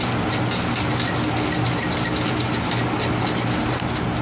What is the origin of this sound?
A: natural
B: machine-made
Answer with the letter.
A